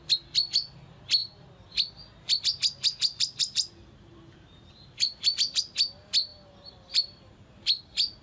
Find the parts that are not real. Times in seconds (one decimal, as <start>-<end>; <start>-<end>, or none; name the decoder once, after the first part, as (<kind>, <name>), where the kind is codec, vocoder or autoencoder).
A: 3.8-5.6 (vocoder, BigVGAN v2); 6.3-7.6